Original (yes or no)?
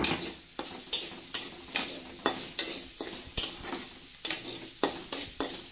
yes